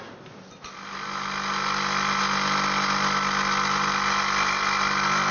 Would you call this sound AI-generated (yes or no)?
no